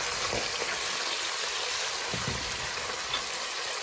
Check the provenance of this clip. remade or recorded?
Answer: recorded